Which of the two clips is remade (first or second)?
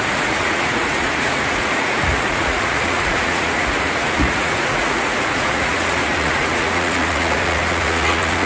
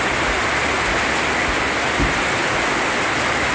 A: first